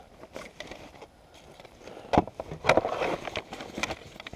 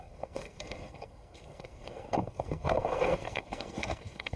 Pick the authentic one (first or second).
first